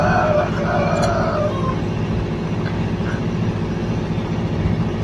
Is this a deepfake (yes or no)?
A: no